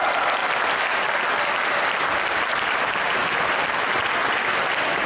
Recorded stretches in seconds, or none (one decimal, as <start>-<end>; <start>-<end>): 0.0-5.1